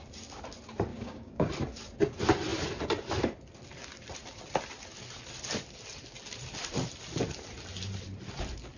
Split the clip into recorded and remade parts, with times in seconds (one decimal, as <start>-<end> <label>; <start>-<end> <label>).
0.0-0.9 recorded; 0.9-1.5 remade; 1.5-8.8 recorded